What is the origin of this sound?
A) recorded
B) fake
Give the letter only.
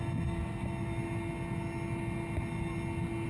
A